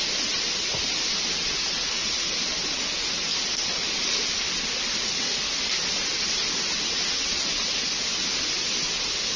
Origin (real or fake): real